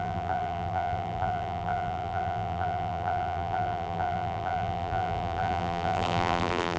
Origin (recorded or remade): remade